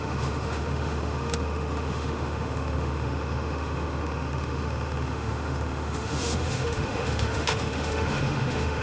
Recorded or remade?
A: remade